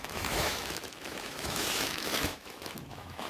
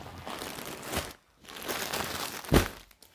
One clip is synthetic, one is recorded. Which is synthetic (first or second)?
first